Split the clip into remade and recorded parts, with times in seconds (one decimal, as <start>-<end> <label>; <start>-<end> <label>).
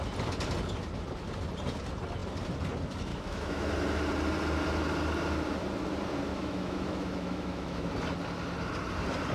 0.0-3.1 recorded; 3.1-3.7 remade; 3.7-6.3 recorded; 6.3-7.9 remade; 7.9-9.3 recorded